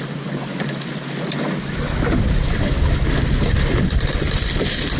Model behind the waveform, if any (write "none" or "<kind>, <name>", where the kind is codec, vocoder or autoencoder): none